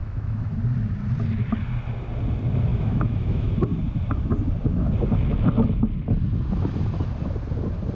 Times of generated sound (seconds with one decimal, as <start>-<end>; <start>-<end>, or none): 0.0-0.6; 2.7-3.5